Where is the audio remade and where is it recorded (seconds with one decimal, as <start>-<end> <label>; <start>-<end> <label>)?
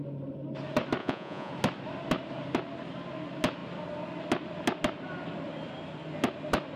0.0-1.0 recorded; 1.0-1.5 remade; 1.5-6.8 recorded